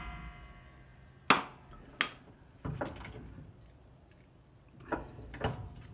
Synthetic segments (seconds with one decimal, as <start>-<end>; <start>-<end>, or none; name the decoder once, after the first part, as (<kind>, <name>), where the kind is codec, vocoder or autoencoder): none